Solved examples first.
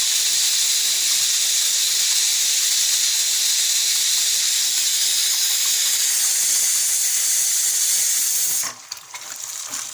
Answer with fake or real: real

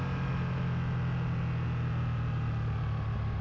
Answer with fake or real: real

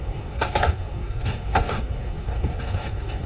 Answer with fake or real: fake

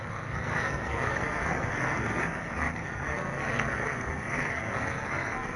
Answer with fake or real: fake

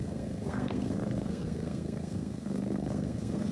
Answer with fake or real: fake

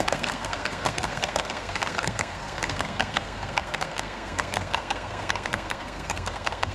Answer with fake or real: fake